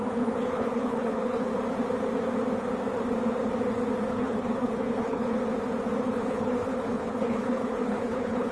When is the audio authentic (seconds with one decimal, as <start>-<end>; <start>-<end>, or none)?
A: 1.5-4.1; 5.4-6.0